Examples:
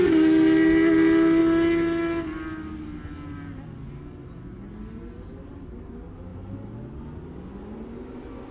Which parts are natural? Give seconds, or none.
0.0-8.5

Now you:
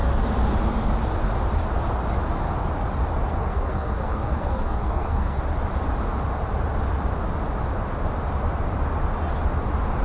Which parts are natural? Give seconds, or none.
0.0-3.3; 5.4-10.0

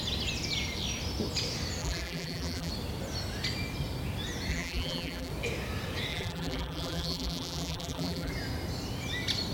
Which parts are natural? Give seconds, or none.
0.0-1.8; 2.7-4.5; 5.3-6.1; 8.3-9.5

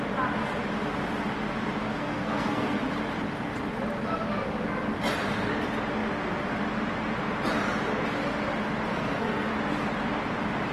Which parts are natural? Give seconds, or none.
0.0-1.8; 2.8-8.9; 9.5-10.7

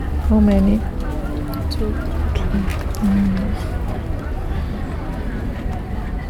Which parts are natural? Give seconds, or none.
0.0-2.7; 3.7-6.3

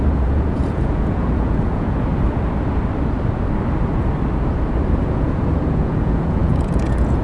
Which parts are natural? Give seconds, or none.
2.1-5.0

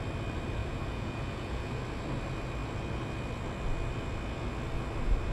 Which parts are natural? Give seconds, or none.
0.0-0.6; 1.7-5.3